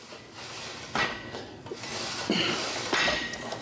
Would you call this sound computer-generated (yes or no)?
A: no